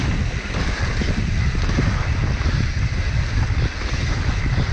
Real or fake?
real